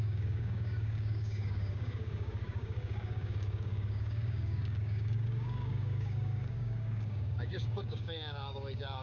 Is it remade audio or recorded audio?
remade